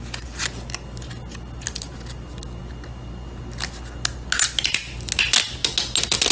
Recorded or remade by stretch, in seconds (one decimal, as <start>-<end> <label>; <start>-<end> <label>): 0.0-6.3 recorded